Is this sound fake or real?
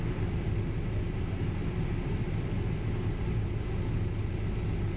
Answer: real